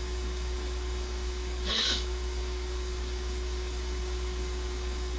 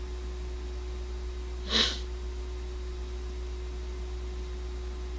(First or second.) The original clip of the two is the second